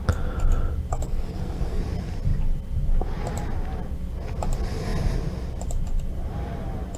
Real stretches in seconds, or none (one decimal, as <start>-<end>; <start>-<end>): 0.0-0.9; 1.8-7.0